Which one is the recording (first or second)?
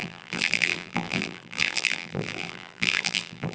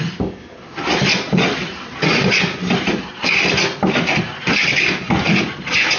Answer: second